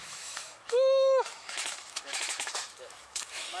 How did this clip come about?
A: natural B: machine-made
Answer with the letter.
B